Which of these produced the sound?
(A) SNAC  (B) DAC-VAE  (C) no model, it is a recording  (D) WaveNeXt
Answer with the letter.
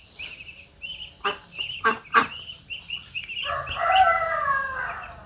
C